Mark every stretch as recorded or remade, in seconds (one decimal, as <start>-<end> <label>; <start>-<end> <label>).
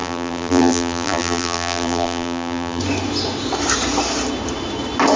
0.0-2.8 remade; 2.8-5.2 recorded